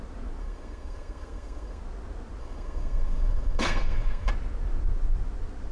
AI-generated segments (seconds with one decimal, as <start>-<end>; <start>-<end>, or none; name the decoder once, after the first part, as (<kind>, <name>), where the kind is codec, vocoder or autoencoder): 0.4-1.8 (codec, SNAC); 2.4-4.3